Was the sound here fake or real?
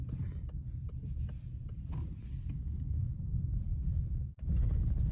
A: real